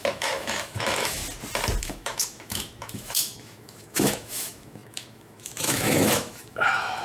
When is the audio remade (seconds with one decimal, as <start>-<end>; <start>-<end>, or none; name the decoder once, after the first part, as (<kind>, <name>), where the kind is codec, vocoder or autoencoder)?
0.0-1.2 (autoencoder, DAC-VAE); 1.8-7.0